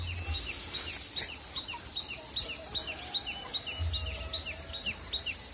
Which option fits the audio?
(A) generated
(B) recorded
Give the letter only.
B